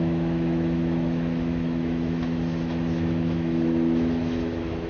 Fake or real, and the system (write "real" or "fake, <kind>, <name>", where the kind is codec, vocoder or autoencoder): fake, autoencoder, DAC-VAE